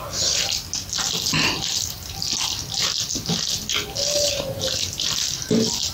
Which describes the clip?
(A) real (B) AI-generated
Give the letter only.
A